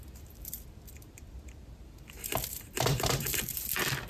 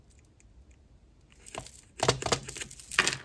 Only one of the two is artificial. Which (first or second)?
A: first